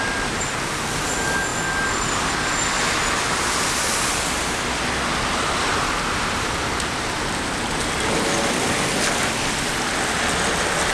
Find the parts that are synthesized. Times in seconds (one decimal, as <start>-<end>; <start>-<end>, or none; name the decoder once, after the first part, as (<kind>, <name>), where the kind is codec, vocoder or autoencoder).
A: none